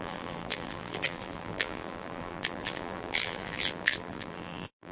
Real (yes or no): no